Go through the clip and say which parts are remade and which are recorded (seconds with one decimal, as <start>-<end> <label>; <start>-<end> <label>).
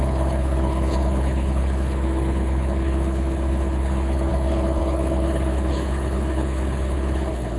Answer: 0.0-7.6 remade